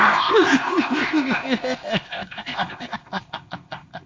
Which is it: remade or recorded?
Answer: remade